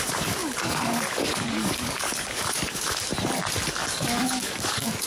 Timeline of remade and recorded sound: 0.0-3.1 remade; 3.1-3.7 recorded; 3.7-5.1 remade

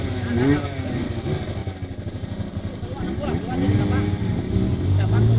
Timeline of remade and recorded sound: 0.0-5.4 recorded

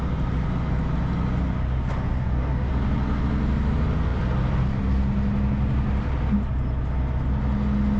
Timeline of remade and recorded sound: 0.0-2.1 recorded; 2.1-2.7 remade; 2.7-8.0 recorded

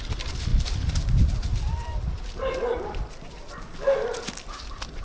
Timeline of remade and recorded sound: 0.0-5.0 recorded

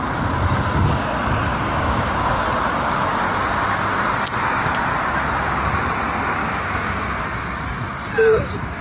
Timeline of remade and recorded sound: 0.0-1.5 recorded; 1.5-2.4 remade; 2.4-6.4 recorded; 6.4-7.2 remade; 7.2-8.8 recorded